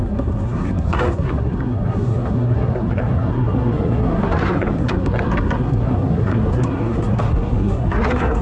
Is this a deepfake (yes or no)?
yes